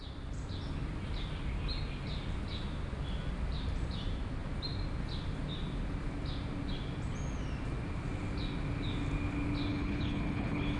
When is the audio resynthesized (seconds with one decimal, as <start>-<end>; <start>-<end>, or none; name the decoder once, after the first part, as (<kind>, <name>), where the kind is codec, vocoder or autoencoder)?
9.7-10.8 (codec, HILCodec)